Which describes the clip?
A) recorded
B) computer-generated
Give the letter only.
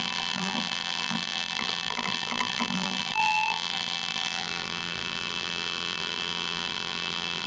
B